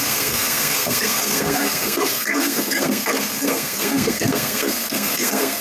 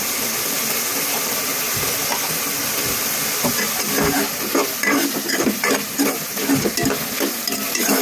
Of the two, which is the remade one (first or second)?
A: first